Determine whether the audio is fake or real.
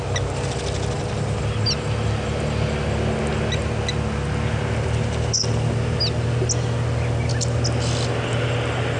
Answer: real